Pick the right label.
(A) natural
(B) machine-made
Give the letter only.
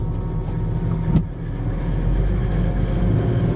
A